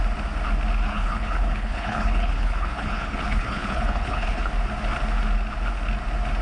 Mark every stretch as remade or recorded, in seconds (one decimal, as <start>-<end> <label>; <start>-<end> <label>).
0.0-0.9 recorded; 0.9-4.5 remade; 4.5-6.4 recorded